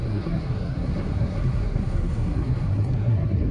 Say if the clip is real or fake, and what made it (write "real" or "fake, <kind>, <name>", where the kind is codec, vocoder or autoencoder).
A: fake, codec, SNAC